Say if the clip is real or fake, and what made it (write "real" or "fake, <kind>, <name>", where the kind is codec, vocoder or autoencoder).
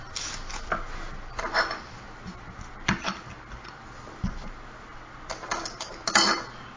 real